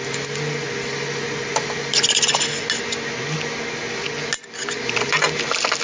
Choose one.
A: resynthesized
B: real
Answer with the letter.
B